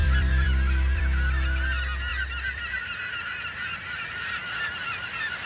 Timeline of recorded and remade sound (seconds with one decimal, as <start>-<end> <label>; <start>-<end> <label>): 0.0-1.0 remade; 1.0-2.1 recorded; 2.1-4.0 remade; 4.0-5.5 recorded